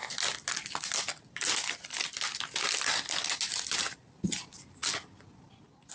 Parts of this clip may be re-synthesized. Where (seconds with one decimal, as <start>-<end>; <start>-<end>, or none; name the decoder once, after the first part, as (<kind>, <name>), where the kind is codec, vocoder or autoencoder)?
none